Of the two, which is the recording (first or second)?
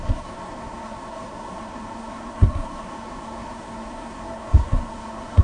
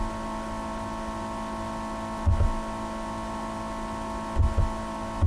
second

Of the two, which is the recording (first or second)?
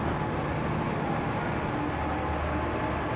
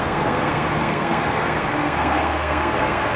first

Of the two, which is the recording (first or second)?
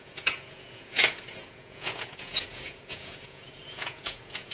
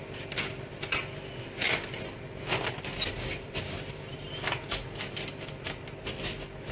second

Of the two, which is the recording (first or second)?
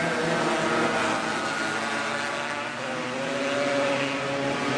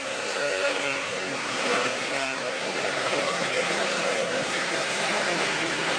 first